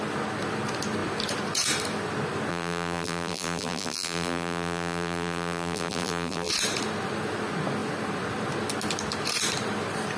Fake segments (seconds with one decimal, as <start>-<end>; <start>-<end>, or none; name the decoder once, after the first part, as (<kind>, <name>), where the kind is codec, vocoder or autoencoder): 2.5-6.5 (vocoder, BigVGAN v2)